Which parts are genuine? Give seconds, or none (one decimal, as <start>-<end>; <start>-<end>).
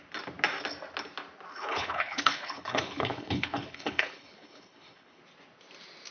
0.0-1.5; 5.2-6.1